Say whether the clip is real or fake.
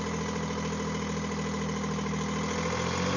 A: real